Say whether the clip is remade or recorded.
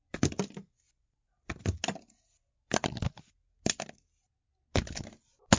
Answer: recorded